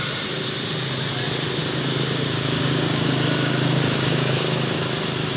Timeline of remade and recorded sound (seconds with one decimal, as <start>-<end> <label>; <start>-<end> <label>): 0.0-1.6 recorded; 1.6-4.8 remade; 4.8-5.4 recorded